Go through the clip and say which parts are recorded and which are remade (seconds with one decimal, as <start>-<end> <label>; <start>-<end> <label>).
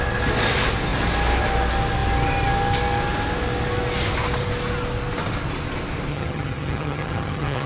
0.0-6.1 recorded; 6.1-7.7 remade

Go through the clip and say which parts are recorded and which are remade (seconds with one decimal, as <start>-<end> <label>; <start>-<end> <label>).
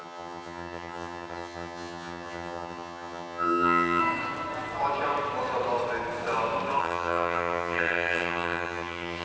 0.0-4.0 remade; 4.0-6.8 recorded; 6.8-9.2 remade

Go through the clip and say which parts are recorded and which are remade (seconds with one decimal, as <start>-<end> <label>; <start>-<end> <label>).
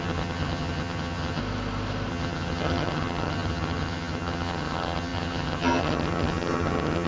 0.0-1.4 remade; 1.4-2.1 recorded; 2.1-7.1 remade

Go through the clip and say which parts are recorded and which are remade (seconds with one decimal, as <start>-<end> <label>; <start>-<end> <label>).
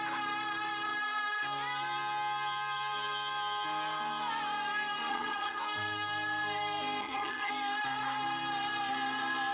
0.0-5.1 recorded; 5.1-5.6 remade; 5.6-7.0 recorded; 7.0-7.5 remade; 7.5-9.5 recorded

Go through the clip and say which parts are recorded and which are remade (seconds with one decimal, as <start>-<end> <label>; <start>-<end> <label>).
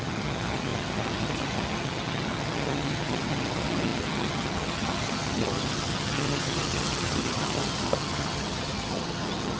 0.0-9.6 remade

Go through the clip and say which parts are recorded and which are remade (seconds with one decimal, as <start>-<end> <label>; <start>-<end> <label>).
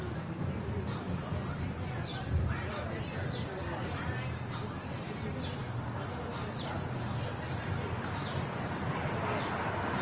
0.0-10.0 recorded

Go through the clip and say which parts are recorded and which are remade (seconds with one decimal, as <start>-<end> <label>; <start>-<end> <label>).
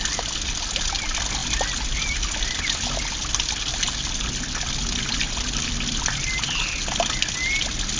0.0-8.0 recorded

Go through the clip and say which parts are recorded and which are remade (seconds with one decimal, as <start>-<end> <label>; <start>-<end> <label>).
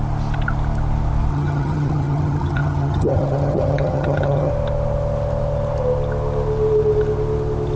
0.0-1.3 recorded; 1.3-4.5 remade; 4.5-7.8 recorded